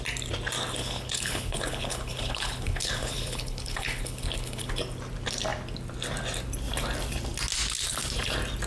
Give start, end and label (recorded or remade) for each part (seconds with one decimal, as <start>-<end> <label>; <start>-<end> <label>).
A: 0.0-0.8 recorded; 0.8-4.7 remade; 4.7-8.7 recorded